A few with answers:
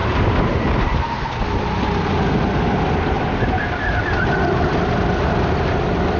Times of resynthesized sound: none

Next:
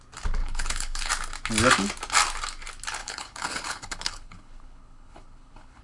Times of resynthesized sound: 0.4-1.1; 3.0-5.8

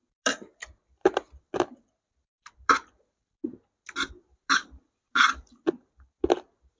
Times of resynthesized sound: none

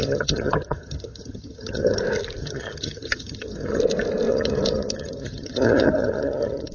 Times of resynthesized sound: 0.0-2.0; 2.4-3.8; 4.3-6.7